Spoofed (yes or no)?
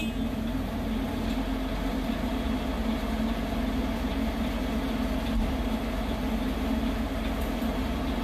no